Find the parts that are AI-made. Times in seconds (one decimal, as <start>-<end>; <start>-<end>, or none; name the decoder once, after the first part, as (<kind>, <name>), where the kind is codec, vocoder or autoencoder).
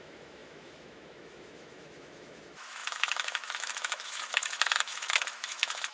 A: 0.0-5.9 (autoencoder, DAC-VAE)